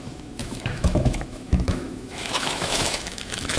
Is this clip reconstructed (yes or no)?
yes